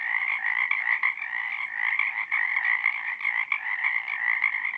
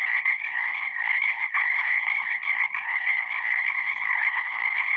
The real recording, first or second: first